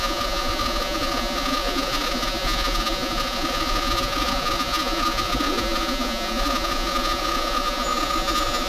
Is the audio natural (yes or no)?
no